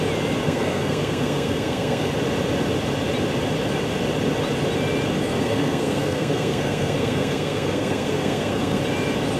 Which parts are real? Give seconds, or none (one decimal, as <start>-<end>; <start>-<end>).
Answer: 0.0-0.4; 2.1-5.2; 8.8-9.4